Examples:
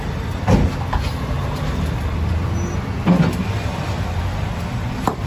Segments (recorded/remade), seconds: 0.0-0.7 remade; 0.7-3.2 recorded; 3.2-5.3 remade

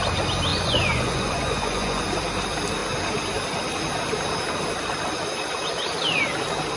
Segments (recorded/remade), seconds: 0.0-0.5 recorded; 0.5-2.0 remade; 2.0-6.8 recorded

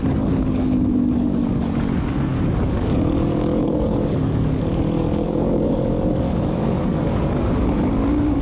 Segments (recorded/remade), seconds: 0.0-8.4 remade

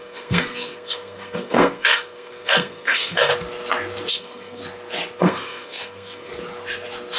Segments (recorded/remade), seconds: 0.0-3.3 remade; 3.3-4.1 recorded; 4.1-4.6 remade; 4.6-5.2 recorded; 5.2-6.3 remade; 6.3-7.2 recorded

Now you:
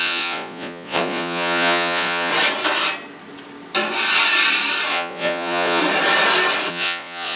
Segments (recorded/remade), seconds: 0.0-2.3 remade; 2.3-4.9 recorded; 4.9-5.8 remade; 5.8-6.7 recorded; 6.7-7.4 remade